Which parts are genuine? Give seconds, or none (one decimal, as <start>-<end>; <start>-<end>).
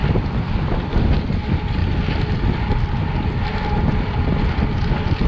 0.0-5.3